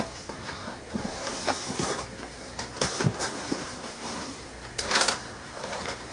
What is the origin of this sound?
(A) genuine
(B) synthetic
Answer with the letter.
B